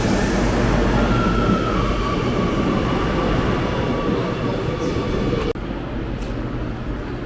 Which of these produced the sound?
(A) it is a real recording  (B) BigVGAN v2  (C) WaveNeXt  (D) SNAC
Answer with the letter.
A